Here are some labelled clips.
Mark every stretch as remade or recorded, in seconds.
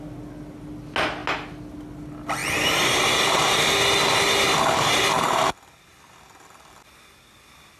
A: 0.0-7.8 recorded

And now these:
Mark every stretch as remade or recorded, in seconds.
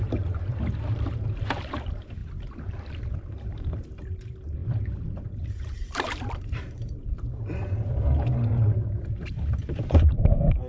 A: 0.0-2.2 remade; 2.2-3.3 recorded; 3.3-10.7 remade